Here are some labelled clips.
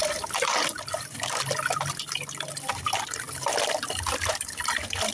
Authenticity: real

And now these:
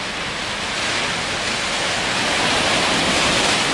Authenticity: real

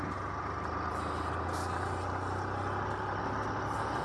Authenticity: real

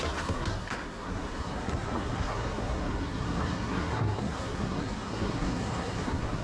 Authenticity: fake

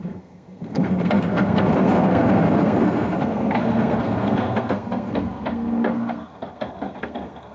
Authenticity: fake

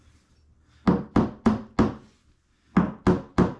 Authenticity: real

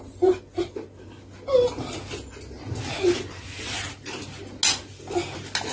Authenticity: real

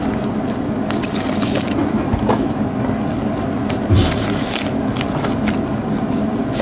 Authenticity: real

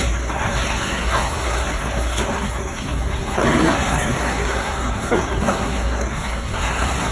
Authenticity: fake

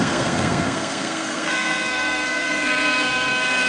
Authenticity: fake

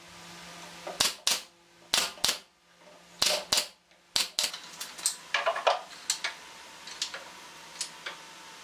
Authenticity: real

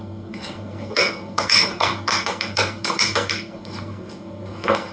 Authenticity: fake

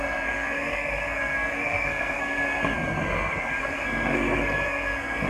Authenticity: fake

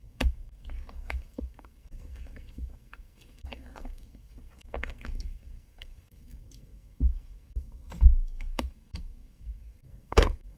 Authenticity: fake